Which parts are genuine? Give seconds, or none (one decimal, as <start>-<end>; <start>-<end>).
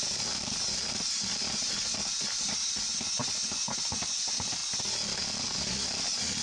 0.0-6.4